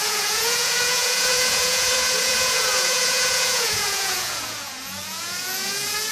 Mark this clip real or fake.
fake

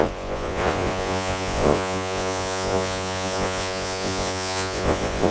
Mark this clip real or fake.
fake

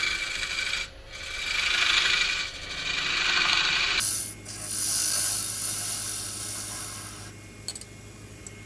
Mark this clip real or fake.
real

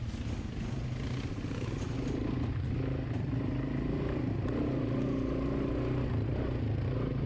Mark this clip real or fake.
real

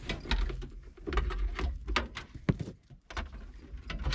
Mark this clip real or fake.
real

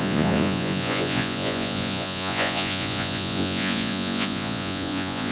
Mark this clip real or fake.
fake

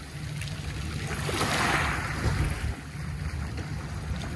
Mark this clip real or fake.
real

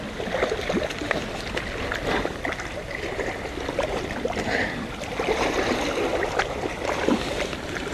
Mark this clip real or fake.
real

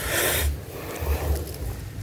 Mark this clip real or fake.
real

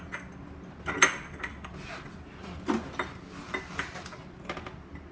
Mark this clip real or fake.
real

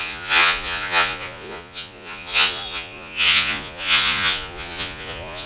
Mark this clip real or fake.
fake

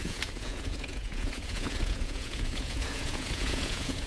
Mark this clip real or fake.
fake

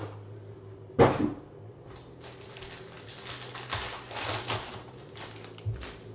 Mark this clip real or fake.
real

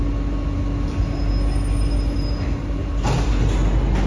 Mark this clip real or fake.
real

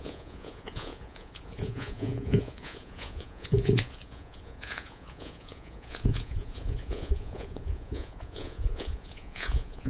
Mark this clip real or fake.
fake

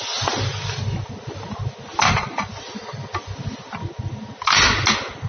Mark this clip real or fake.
real